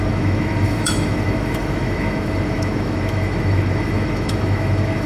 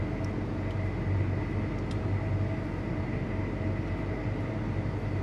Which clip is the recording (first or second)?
second